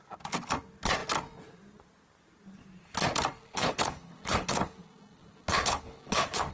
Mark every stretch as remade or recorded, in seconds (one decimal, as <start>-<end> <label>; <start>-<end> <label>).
0.0-3.4 recorded; 3.4-6.5 remade